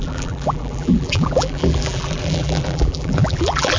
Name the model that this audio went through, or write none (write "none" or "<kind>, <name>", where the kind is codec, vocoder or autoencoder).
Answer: vocoder, BigVGAN v2